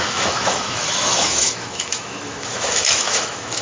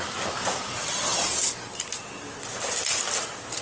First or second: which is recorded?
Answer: second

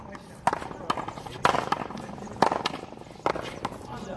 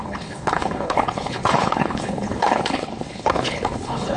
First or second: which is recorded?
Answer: first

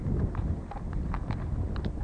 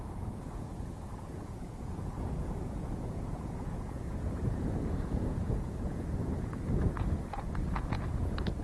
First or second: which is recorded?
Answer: first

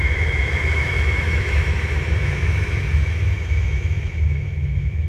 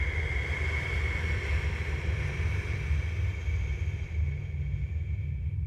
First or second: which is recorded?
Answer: second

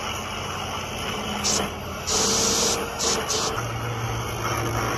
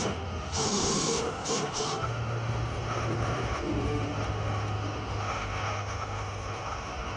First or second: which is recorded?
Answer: first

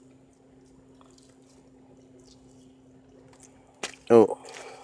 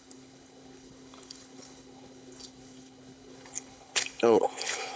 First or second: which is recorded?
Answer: first